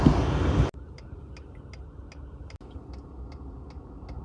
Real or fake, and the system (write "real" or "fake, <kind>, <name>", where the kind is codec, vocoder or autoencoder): real